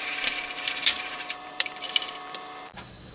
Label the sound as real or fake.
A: fake